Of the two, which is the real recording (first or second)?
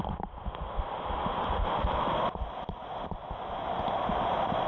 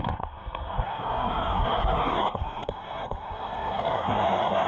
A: first